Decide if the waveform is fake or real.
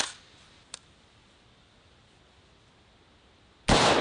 real